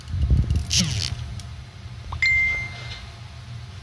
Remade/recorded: recorded